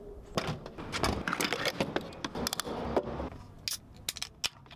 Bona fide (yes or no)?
yes